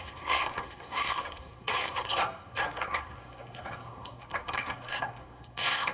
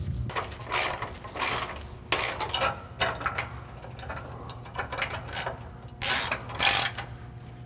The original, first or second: second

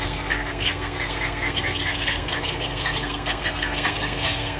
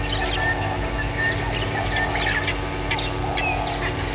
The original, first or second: second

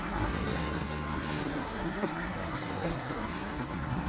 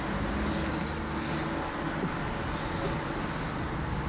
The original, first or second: second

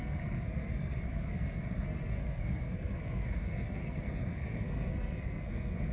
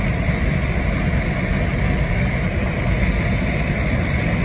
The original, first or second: second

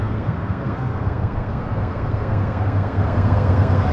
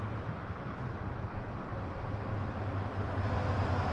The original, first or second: second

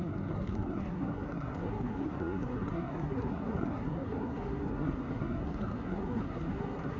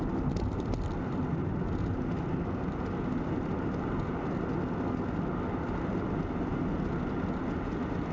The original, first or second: second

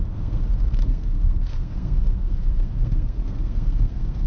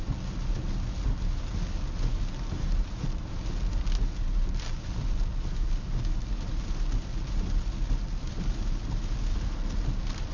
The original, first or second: second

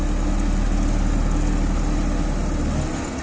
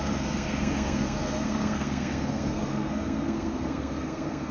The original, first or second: first